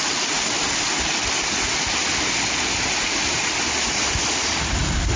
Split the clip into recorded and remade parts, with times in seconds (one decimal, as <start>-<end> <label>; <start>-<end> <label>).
0.0-5.2 recorded